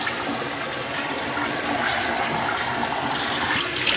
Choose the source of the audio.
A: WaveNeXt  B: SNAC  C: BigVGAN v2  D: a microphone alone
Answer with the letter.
D